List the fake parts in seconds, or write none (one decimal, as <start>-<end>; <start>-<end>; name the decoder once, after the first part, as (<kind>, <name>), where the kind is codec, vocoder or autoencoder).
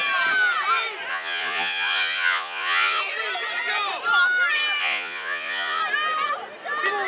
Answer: 1.1-3.0 (vocoder, Vocos); 4.8-5.8